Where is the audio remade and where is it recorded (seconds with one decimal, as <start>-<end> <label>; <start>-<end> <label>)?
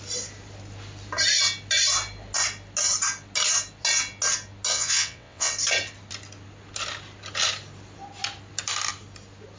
0.0-4.7 recorded; 4.7-5.5 remade; 5.5-9.6 recorded